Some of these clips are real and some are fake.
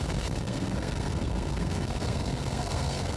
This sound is fake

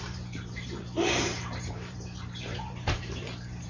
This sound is fake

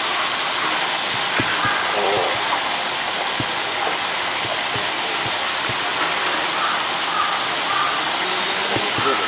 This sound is real